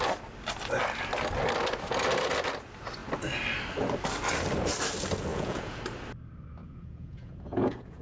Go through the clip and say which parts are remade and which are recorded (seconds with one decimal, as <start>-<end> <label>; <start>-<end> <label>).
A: 0.0-5.3 recorded; 5.3-5.8 remade; 5.8-6.6 recorded; 6.6-8.0 remade